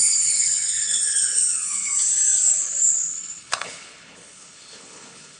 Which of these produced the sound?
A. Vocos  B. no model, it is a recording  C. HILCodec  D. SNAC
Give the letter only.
C